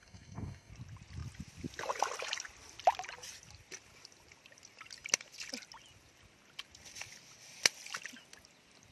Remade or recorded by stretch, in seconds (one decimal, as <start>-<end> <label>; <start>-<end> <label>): 0.0-0.7 remade; 0.7-8.9 recorded